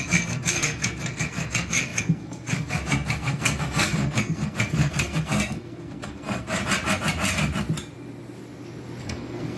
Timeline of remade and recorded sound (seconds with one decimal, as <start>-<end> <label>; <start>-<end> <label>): 0.0-6.6 remade; 6.6-9.0 recorded; 9.0-9.6 remade